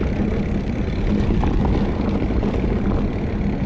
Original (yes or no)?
yes